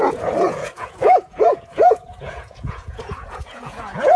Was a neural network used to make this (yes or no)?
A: yes